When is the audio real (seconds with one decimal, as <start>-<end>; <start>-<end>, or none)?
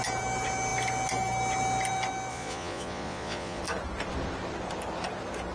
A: 0.0-2.3; 3.6-5.5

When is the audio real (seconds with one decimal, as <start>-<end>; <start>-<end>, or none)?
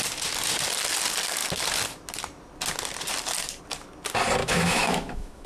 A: 0.0-4.4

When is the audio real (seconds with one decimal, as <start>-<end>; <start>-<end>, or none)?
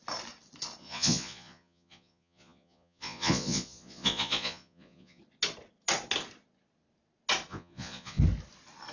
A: 0.0-0.8; 5.2-7.5; 8.2-8.9